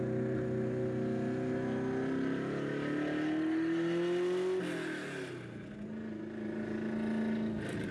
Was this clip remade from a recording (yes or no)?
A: no